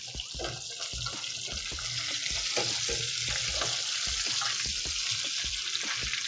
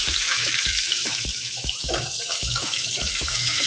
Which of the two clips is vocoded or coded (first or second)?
second